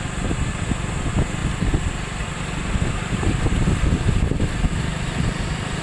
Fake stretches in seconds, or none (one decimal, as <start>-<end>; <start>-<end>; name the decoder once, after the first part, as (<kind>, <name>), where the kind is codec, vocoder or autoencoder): none